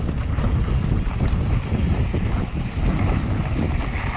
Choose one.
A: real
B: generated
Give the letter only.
A